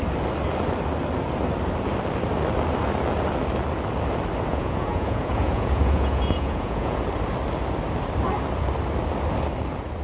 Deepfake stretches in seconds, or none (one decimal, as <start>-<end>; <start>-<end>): 4.5-7.0

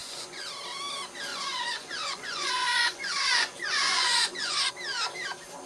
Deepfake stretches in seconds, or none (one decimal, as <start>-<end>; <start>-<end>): 0.0-0.5; 1.3-4.7